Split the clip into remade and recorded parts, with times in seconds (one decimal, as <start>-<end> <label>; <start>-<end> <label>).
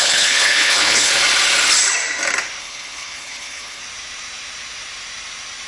0.0-1.1 remade; 1.1-2.6 recorded; 2.6-3.8 remade; 3.8-5.7 recorded